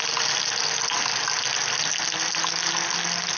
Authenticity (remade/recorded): recorded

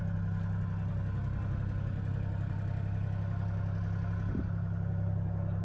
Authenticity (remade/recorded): recorded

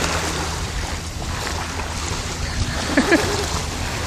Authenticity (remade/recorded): recorded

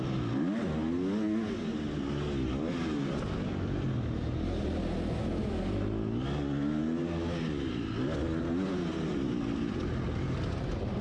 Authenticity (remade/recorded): recorded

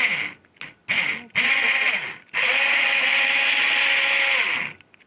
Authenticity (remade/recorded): recorded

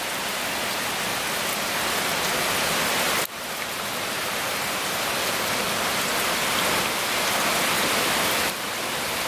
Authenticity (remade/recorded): recorded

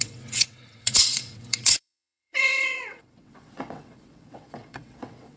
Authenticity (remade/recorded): remade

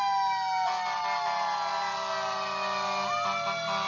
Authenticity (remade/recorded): recorded